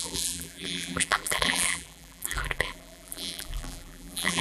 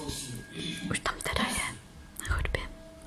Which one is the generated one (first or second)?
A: first